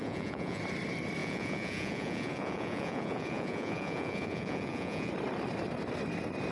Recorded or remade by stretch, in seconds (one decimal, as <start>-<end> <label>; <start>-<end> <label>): 0.0-0.6 remade; 0.6-1.2 recorded; 1.2-5.1 remade; 5.1-6.5 recorded